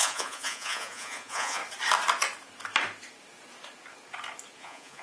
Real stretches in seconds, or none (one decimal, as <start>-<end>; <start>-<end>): 1.6-4.6